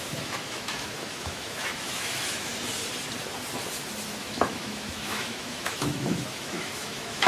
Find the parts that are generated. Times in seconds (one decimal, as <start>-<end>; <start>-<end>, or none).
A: 0.0-2.5; 4.2-7.3